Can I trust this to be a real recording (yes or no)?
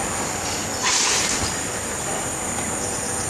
yes